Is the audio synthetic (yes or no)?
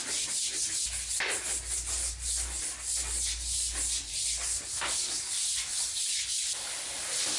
no